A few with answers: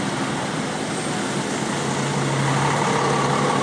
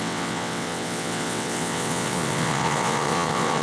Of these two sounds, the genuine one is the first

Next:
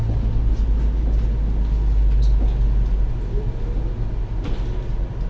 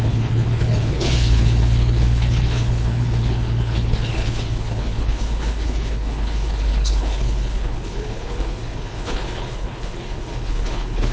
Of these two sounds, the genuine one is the first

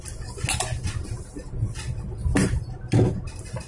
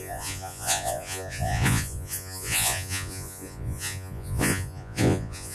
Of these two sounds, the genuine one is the first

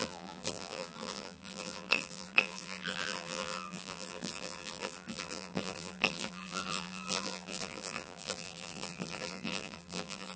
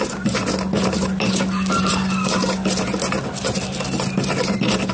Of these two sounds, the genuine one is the second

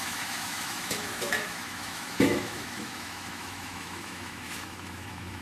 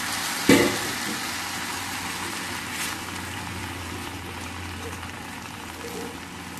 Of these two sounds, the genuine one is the second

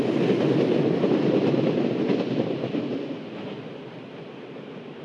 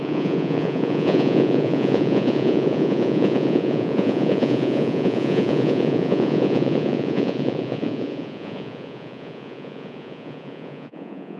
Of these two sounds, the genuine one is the first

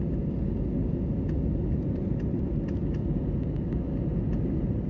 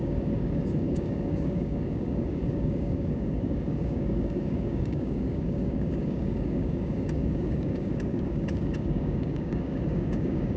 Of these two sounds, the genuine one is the first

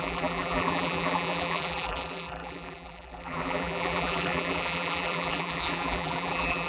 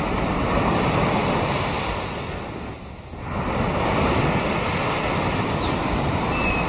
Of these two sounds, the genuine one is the second